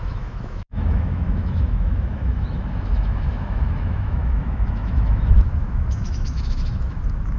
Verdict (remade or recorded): remade